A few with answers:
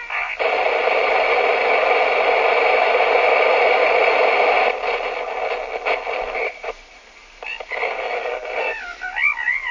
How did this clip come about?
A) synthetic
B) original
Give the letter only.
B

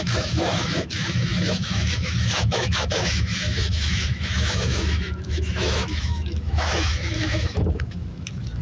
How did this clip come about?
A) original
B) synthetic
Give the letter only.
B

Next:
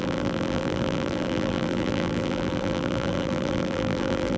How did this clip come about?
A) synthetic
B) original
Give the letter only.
A